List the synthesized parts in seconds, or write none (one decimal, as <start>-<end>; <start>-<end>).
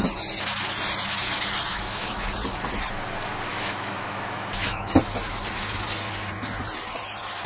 1.7-2.3; 3.5-4.9